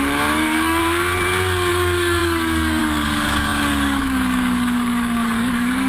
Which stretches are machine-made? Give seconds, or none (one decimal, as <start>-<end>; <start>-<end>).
0.0-0.8; 1.7-5.9